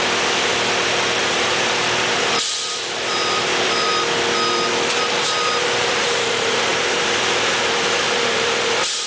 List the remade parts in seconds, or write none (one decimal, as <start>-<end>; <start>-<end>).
0.0-0.5; 1.2-3.9; 5.7-9.1